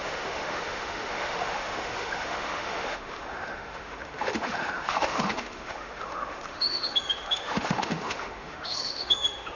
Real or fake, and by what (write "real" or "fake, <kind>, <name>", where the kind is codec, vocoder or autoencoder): fake, autoencoder, DAC-VAE